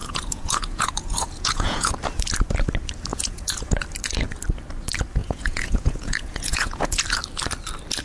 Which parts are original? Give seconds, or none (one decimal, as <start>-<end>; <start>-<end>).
1.9-3.1; 3.7-5.2; 7.0-8.0